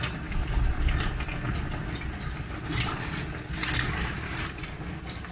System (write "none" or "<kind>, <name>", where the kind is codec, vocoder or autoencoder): none